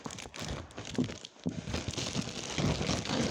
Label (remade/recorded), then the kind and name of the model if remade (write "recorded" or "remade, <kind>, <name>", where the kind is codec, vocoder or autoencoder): recorded